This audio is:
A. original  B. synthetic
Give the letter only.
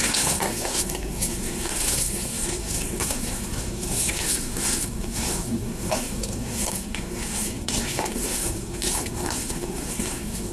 B